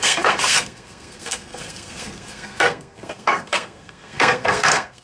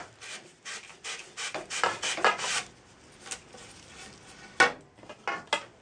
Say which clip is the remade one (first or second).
first